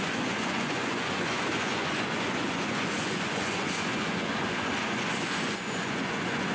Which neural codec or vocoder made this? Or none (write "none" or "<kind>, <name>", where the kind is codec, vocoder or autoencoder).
vocoder, Vocos